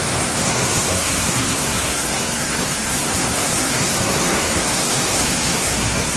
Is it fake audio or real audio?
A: fake